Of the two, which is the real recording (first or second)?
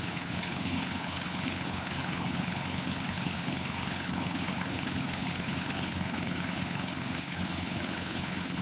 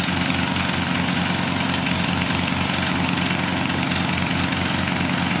second